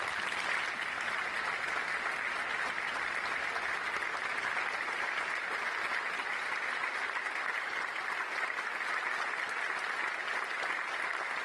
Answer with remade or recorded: recorded